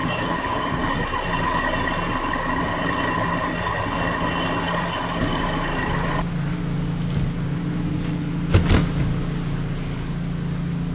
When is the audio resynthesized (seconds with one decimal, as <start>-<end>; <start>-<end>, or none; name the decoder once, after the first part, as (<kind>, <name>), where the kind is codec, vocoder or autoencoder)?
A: 0.0-0.8 (codec, DAC)